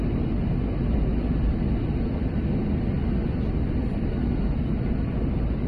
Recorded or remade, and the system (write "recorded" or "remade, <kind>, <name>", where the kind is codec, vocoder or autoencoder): recorded